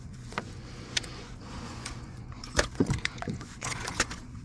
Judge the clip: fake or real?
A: fake